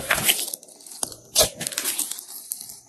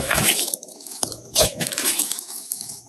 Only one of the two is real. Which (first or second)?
first